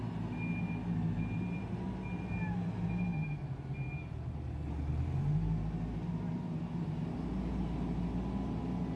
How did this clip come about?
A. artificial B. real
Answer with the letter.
B